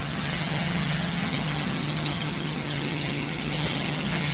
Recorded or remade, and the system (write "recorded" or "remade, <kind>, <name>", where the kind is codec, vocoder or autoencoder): remade, vocoder, HiFi-GAN